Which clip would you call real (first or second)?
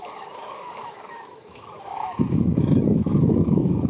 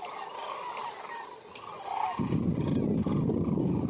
second